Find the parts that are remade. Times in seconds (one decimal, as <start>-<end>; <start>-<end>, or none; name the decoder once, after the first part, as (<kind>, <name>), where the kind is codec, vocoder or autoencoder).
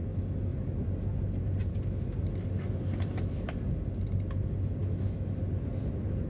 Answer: 4.8-5.4 (autoencoder, DAC-VAE)